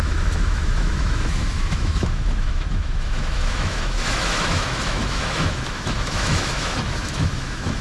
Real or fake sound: fake